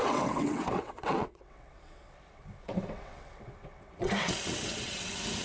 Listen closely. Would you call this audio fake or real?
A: fake